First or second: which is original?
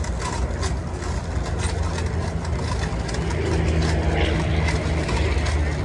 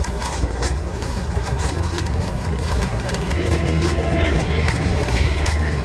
first